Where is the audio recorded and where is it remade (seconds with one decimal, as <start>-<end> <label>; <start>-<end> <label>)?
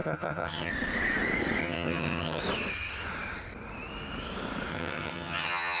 0.0-0.7 remade; 0.7-1.6 recorded; 1.6-2.4 remade; 2.4-4.7 recorded; 4.7-5.8 remade